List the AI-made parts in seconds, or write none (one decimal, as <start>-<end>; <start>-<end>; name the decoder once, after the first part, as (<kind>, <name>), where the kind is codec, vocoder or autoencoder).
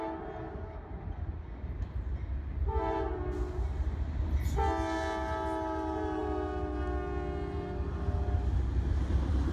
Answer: none